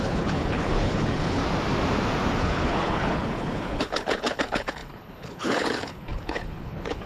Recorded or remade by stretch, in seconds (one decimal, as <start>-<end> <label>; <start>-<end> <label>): 0.0-1.4 remade; 1.4-2.4 recorded; 2.4-7.1 remade